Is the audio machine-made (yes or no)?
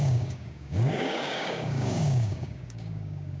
yes